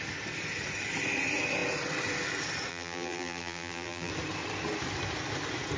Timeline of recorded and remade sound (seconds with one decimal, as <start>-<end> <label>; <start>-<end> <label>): 0.0-2.7 recorded; 2.7-4.1 remade; 4.1-5.8 recorded